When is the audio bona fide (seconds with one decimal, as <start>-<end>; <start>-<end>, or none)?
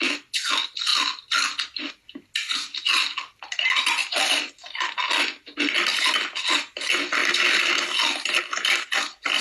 0.0-9.4